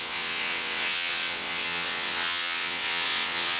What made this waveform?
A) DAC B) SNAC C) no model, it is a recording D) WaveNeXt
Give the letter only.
D